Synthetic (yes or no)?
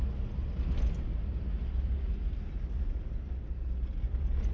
no